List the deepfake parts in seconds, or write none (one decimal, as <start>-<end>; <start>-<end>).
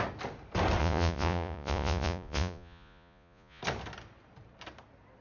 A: 0.8-3.6